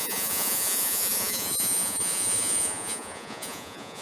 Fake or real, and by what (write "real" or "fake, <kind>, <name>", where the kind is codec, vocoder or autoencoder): fake, vocoder, Vocos